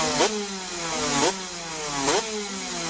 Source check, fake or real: real